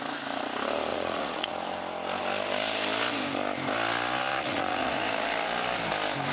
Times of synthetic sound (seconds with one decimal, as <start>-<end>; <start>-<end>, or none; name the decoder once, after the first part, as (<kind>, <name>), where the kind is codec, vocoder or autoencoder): 0.9-1.5 (vocoder, Vocos); 4.3-5.0